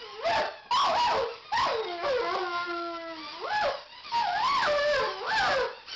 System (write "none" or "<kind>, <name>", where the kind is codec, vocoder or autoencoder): none